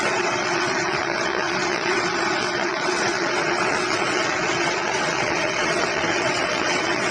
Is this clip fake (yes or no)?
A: yes